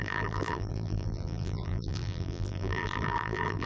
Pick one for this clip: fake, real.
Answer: fake